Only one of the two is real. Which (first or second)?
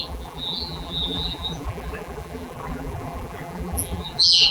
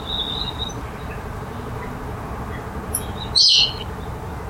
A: second